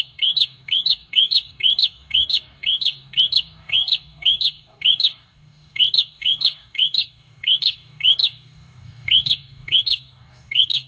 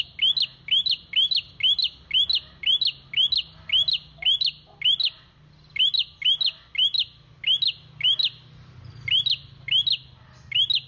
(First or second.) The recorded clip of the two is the second